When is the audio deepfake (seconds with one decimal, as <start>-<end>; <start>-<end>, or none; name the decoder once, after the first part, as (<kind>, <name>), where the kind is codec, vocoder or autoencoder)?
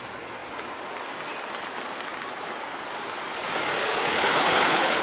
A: 3.8-5.0 (codec, HILCodec)